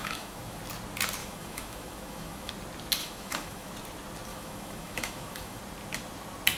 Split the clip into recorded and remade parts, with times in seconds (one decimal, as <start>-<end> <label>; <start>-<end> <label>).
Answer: 0.0-0.6 remade; 0.6-1.2 recorded; 1.2-2.5 remade; 2.5-3.0 recorded; 3.0-3.7 remade; 3.7-4.3 recorded; 4.3-5.6 remade; 5.6-6.6 recorded